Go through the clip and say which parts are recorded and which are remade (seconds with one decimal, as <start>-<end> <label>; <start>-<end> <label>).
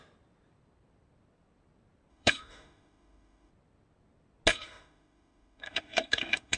0.0-2.1 recorded; 2.1-3.5 remade; 3.5-4.5 recorded; 4.5-6.6 remade